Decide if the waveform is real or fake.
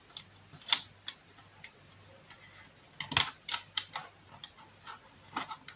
real